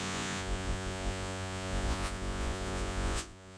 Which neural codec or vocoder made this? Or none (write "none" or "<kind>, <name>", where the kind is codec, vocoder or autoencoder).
vocoder, Vocos